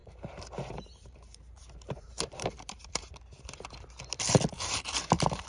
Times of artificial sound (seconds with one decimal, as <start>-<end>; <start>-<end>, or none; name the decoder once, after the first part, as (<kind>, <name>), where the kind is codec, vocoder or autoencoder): 0.0-3.1 (vocoder, BigVGAN v2); 4.5-5.5